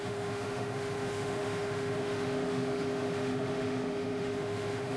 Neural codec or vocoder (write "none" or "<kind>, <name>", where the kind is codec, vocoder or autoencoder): autoencoder, DAC-VAE